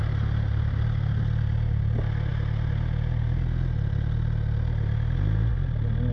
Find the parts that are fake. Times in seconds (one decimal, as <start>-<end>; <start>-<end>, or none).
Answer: none